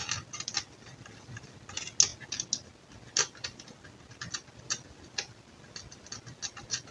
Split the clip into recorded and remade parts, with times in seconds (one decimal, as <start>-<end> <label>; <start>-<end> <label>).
0.0-6.9 recorded